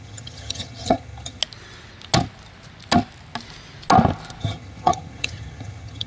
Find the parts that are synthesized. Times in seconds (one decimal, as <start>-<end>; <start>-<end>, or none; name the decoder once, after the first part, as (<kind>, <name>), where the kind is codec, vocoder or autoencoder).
0.0-1.4 (vocoder, HiFi-GAN); 4.4-6.1